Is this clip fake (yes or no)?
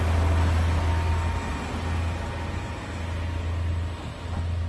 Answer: no